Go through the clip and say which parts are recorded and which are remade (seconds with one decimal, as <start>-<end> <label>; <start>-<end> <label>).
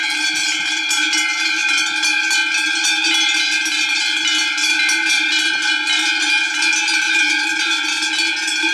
0.0-8.7 recorded